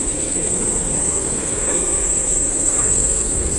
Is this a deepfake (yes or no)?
yes